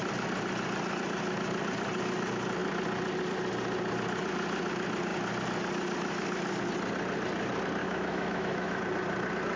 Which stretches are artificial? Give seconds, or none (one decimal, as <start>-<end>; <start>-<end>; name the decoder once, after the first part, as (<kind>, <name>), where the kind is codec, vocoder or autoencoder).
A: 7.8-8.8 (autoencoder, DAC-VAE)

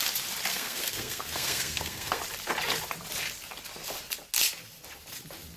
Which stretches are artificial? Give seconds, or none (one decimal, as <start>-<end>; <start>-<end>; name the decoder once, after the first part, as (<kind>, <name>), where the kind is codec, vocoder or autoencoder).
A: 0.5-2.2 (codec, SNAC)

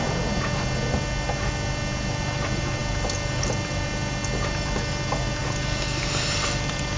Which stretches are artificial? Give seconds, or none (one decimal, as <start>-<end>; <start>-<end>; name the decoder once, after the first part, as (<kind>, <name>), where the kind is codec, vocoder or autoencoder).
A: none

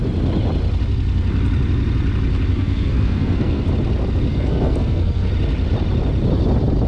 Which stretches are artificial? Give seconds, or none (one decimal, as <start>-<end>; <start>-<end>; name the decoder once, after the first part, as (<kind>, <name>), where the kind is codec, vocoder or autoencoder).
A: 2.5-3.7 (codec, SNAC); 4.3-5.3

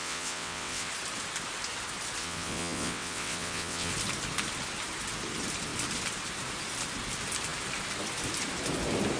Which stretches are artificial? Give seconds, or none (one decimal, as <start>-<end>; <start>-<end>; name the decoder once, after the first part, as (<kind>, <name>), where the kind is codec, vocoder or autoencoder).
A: 0.0-0.9 (vocoder, WaveNeXt); 2.2-3.9

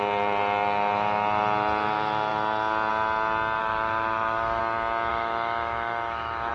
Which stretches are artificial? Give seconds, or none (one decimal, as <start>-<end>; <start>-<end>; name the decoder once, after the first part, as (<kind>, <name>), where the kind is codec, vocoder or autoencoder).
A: 3.6-4.6 (autoencoder, DAC-VAE); 5.1-6.5

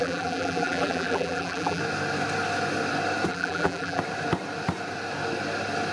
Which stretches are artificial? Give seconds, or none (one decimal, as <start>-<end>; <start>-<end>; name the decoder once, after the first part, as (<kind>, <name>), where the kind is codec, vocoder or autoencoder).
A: 0.0-1.8 (vocoder, BigVGAN v2); 3.3-4.0

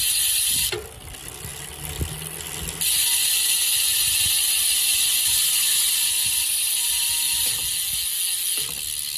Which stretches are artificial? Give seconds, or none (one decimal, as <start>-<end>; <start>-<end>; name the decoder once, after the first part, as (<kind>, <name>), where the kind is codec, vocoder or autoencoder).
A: none